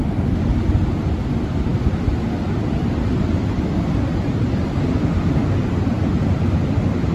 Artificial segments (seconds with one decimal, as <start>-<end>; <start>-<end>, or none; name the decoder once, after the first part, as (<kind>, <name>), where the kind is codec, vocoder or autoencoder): none